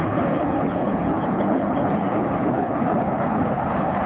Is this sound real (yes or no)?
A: no